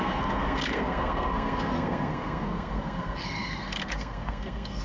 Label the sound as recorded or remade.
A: remade